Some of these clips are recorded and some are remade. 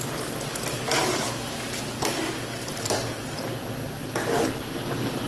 recorded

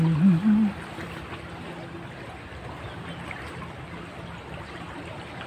recorded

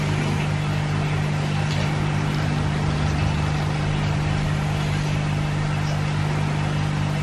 recorded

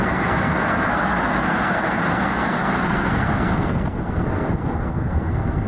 remade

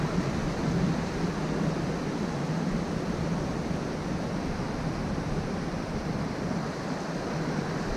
recorded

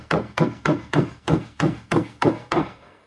remade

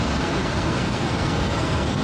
remade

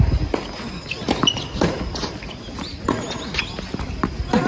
recorded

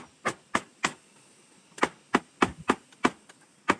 recorded